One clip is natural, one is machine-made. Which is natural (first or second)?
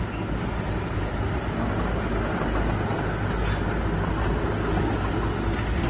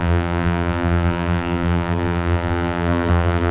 first